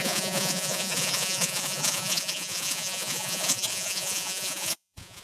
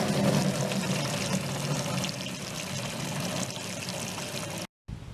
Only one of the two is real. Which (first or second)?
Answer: second